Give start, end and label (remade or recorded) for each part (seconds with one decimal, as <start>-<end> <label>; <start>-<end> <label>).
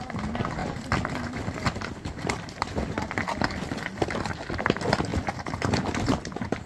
0.0-0.6 recorded; 0.6-4.6 remade; 4.6-6.7 recorded